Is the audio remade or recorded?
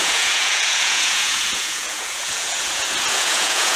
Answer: remade